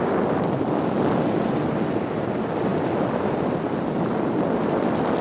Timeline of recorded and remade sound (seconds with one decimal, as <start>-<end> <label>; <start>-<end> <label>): 0.0-5.2 recorded